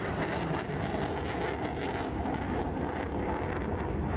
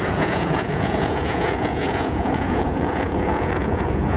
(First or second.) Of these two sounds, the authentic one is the first